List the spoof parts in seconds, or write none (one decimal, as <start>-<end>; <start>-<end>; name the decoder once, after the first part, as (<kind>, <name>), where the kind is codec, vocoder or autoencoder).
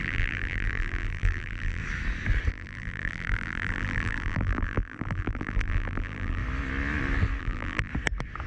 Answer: 0.0-1.8 (vocoder, BigVGAN v2); 2.5-6.4; 7.4-7.9